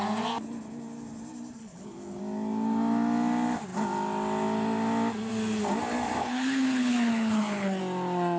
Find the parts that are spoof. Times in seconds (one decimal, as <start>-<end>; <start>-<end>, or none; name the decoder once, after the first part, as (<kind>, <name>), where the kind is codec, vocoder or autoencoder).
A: 1.6-2.2 (codec, HILCodec); 6.2-7.8